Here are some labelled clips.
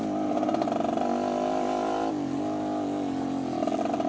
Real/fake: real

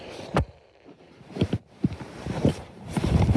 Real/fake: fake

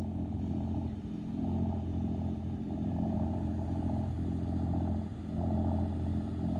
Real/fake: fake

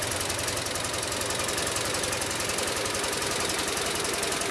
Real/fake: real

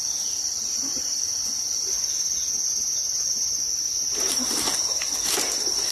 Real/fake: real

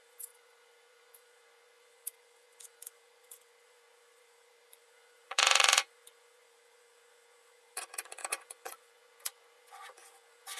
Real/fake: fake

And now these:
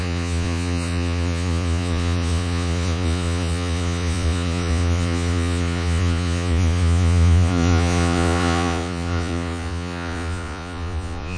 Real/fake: fake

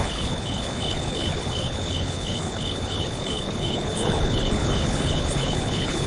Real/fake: fake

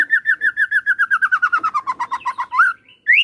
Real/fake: real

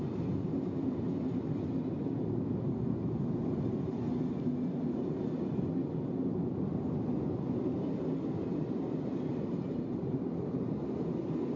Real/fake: real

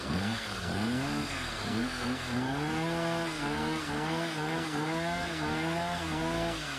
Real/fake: fake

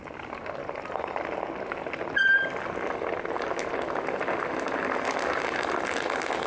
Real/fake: real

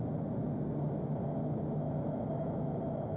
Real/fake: real